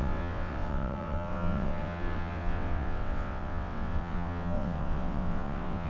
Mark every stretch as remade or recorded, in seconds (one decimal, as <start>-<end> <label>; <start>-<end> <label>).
0.0-5.9 remade